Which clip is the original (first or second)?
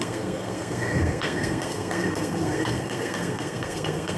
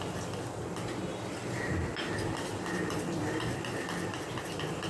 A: second